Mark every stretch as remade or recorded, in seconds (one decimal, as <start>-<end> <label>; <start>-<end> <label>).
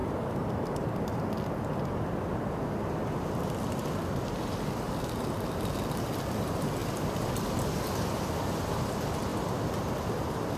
0.0-6.8 recorded; 6.8-8.2 remade; 8.2-9.3 recorded; 9.3-9.9 remade; 9.9-10.6 recorded